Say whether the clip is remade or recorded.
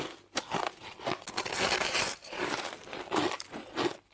recorded